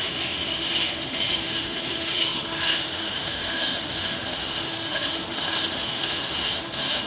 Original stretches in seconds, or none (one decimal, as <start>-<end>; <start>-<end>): none